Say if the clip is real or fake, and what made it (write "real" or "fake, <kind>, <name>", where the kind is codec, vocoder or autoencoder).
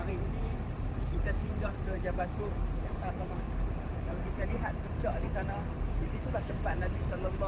fake, vocoder, BigVGAN v2